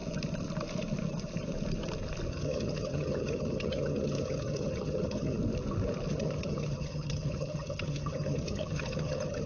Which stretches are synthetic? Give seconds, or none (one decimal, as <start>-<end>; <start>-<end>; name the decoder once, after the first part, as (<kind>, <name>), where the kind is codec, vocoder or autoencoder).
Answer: 2.3-5.4 (vocoder, HiFi-GAN); 6.1-9.5